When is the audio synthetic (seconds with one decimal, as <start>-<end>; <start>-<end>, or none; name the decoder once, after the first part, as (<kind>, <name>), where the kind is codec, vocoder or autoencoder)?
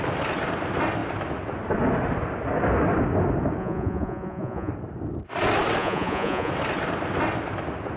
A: 3.6-4.7 (vocoder, Vocos); 5.8-6.5